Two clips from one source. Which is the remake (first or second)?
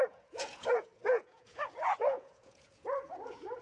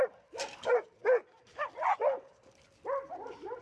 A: first